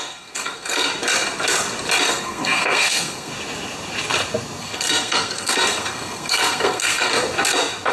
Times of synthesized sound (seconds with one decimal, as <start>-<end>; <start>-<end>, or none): 0.0-0.9; 2.1-3.3; 4.6-7.1